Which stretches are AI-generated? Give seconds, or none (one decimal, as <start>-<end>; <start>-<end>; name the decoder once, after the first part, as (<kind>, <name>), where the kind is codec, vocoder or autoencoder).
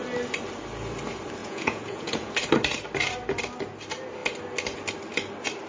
1.4-2.3 (vocoder, Vocos)